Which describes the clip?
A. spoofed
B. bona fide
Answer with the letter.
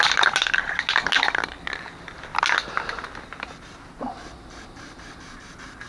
B